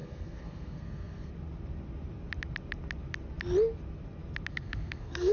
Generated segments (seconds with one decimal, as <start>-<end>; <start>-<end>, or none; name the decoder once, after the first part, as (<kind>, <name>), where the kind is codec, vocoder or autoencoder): 0.0-1.3 (codec, SNAC); 4.5-5.3